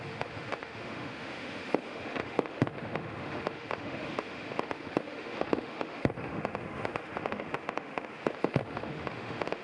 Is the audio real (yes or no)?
no